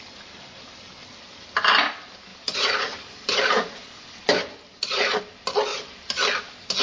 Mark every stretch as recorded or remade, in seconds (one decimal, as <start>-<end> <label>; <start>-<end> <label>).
0.0-2.3 recorded; 2.3-5.2 remade; 5.2-5.7 recorded; 5.7-6.3 remade; 6.3-6.8 recorded